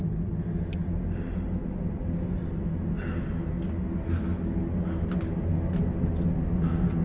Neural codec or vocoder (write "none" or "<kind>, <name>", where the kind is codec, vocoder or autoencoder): none